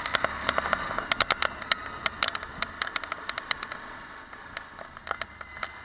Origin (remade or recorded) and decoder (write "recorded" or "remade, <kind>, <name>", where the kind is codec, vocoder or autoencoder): recorded